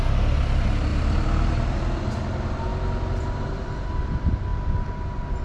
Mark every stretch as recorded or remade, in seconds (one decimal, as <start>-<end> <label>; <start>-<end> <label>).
0.0-0.9 recorded; 0.9-2.0 remade; 2.0-2.7 recorded; 2.7-3.9 remade; 3.9-5.4 recorded